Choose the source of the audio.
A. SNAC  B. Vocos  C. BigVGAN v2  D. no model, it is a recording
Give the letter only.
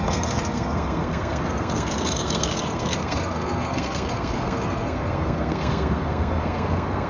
A